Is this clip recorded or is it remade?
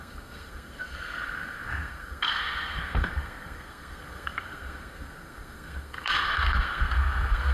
remade